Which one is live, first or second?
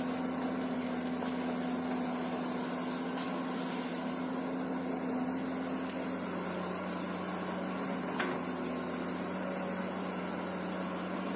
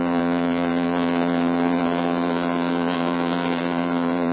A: first